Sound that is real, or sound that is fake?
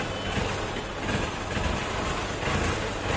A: real